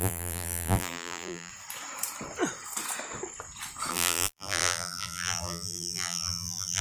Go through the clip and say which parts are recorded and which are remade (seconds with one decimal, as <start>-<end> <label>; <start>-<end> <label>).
0.0-1.5 remade; 1.5-3.9 recorded; 3.9-6.8 remade